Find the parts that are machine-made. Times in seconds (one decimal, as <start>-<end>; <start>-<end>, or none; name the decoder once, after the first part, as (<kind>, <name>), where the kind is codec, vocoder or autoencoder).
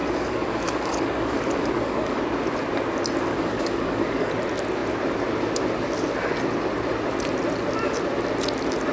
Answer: 0.0-2.2 (codec, DAC); 3.3-4.3